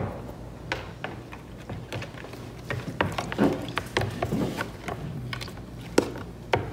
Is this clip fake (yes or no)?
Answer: no